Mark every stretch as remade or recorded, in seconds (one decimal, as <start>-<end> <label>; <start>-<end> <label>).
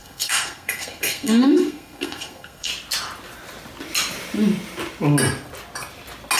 0.0-2.7 remade; 2.7-6.4 recorded